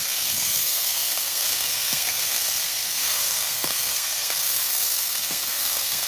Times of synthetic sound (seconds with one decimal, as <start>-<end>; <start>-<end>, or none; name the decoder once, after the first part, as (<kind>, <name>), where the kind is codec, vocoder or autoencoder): 0.0-6.1 (codec, SNAC)